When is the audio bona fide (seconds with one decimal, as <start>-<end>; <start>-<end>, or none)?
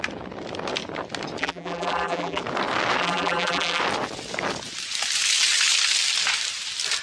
0.0-1.4; 2.4-3.0; 3.8-7.0